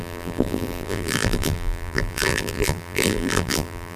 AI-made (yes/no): yes